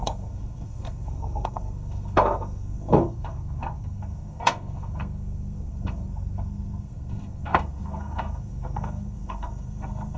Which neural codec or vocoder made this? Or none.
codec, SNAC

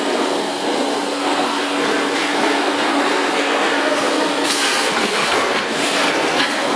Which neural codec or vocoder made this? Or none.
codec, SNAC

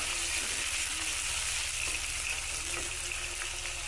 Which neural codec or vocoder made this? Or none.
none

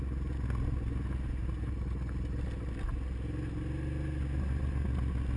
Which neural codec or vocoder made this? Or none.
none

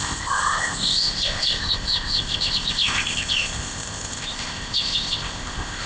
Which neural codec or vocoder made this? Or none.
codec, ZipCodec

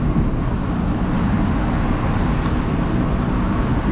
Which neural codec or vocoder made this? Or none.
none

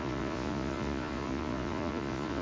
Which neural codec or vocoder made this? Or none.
vocoder, Vocos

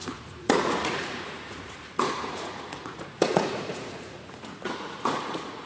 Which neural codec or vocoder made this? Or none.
vocoder, Vocos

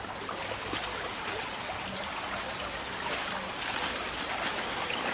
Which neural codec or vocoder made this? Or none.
none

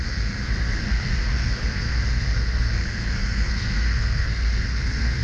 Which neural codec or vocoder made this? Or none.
codec, SNAC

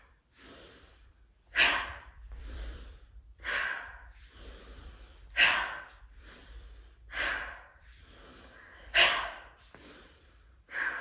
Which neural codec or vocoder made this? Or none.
vocoder, BigVGAN v2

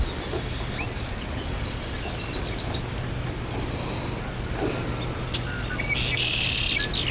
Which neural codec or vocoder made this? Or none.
none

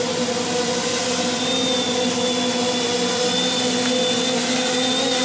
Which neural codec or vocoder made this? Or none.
none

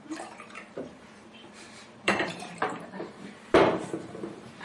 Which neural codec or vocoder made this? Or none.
vocoder, BigVGAN v2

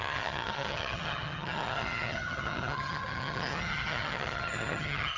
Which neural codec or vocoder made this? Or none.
vocoder, HiFi-GAN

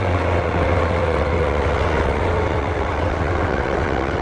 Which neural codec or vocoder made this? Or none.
vocoder, WaveNeXt